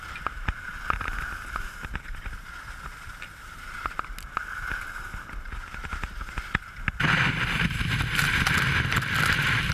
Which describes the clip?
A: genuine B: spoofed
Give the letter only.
A